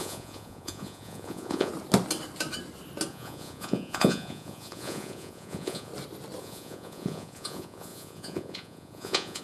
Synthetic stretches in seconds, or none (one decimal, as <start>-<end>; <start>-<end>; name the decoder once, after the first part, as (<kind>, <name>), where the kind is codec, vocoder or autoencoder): 0.0-1.7 (vocoder, Vocos); 3.1-5.9; 6.4-9.4